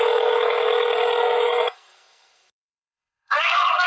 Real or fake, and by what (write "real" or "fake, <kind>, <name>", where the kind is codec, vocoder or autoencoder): fake, codec, SNAC